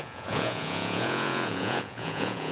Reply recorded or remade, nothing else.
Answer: remade